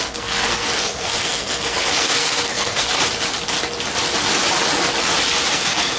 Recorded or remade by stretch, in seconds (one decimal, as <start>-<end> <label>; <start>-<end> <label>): 0.0-3.0 remade; 3.0-5.5 recorded; 5.5-6.0 remade